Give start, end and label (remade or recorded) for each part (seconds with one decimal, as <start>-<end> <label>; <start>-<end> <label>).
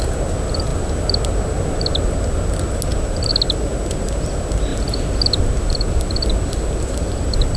0.0-7.6 recorded